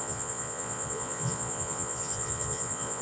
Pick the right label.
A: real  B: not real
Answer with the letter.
B